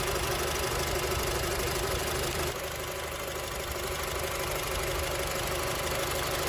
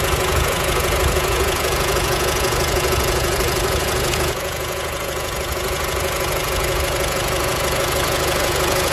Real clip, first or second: first